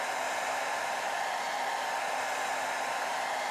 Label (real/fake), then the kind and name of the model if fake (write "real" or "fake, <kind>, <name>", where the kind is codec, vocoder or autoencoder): real